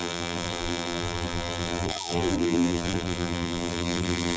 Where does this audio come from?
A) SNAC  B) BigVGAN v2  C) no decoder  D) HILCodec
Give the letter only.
B